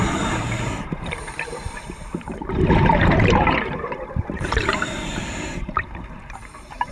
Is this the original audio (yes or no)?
no